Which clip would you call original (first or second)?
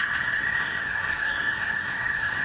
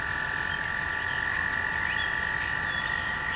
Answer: second